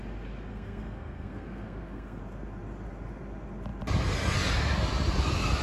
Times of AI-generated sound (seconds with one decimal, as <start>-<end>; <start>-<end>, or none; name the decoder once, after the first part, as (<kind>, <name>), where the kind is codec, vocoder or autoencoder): 0.5-2.2 (codec, SNAC)